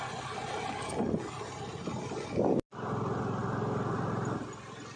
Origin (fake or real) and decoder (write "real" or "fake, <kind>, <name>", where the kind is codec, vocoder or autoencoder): real